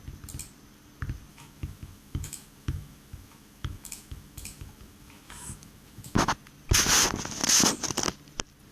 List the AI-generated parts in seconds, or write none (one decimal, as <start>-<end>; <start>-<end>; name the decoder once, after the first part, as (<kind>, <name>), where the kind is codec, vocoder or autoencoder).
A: 1.3-6.3 (autoencoder, DAC-VAE)